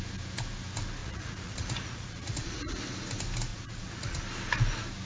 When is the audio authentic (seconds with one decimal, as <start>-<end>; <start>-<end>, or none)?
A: 0.0-1.0; 2.8-3.5; 4.2-5.1